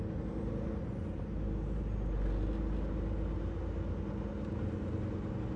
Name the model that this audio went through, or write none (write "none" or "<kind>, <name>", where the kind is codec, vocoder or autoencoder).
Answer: none